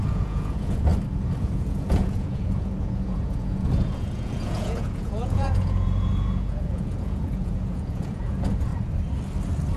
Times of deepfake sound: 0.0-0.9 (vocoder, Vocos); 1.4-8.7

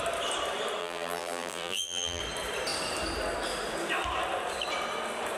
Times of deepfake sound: 0.8-2.2 (vocoder, BigVGAN v2)

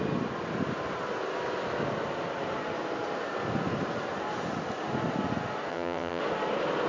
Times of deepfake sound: 5.7-6.2 (vocoder, HiFi-GAN)